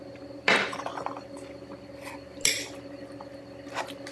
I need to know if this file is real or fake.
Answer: real